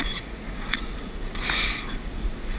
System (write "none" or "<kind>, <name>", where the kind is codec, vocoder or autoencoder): vocoder, Vocos